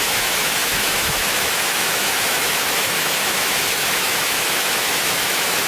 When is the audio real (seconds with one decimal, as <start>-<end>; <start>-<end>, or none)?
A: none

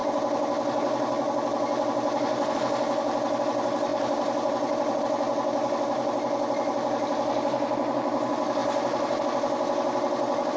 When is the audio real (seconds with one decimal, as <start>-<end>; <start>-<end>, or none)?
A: 0.0-3.9; 5.0-10.6

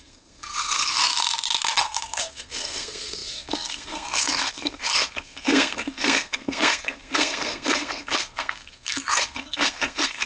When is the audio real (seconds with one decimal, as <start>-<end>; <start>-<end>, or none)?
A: 1.0-1.8

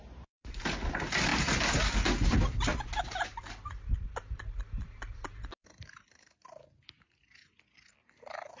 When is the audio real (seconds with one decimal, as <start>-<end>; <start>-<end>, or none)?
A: 0.0-8.6